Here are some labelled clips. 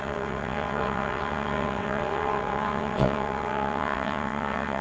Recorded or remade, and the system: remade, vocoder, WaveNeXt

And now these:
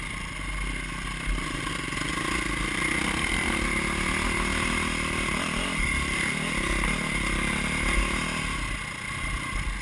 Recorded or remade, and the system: recorded